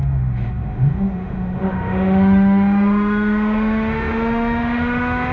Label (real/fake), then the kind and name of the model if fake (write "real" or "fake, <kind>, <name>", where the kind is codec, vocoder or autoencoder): fake, autoencoder, DAC-VAE